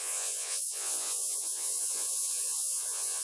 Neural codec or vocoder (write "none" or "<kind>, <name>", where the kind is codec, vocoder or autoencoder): vocoder, Vocos